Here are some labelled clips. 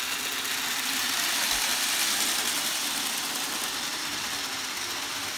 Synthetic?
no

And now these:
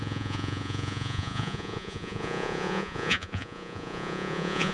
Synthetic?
yes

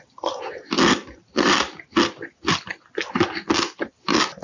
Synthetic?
no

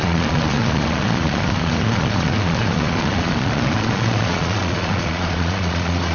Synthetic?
yes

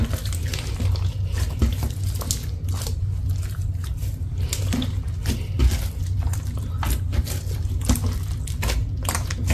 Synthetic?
no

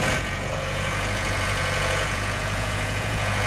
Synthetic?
yes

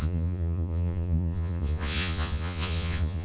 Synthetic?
yes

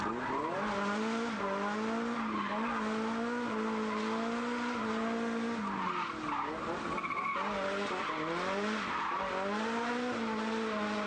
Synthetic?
no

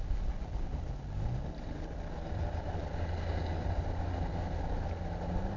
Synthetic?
no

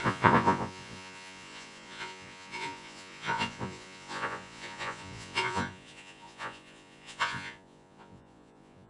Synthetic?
yes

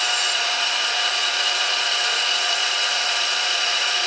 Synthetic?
yes